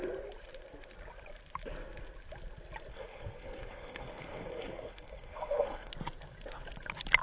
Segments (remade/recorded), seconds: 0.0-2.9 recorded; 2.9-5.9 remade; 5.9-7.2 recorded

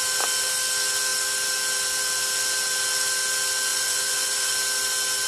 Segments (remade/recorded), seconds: 0.0-3.7 recorded; 3.7-4.5 remade; 4.5-5.3 recorded

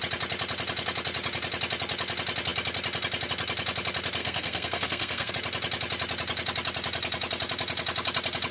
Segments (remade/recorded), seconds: 0.0-4.2 recorded; 4.2-5.3 remade; 5.3-8.5 recorded

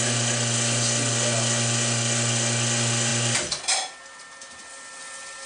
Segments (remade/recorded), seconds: 0.0-5.5 recorded

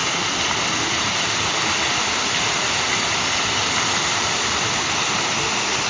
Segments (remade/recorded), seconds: 0.0-5.9 recorded

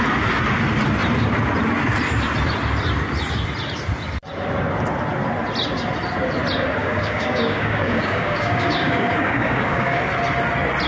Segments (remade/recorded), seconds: 0.0-6.8 recorded; 6.8-10.0 remade; 10.0-10.9 recorded

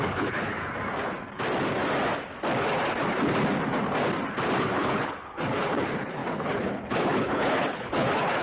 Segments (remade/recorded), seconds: 0.0-0.6 remade; 0.6-4.6 recorded; 4.6-8.4 remade